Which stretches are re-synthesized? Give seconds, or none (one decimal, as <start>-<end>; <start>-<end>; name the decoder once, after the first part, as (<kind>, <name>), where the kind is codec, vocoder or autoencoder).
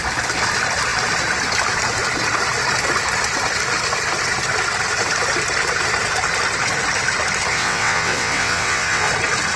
7.5-9.1 (vocoder, WaveNeXt)